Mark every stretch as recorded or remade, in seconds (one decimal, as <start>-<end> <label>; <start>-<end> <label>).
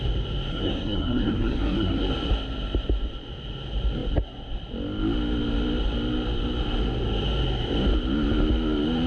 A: 0.0-0.5 recorded; 0.5-2.1 remade; 2.1-9.1 recorded